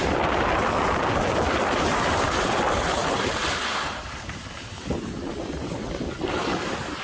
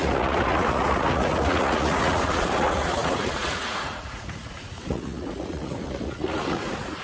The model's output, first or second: second